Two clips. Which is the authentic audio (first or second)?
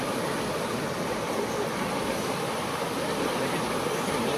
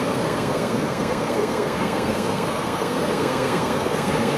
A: first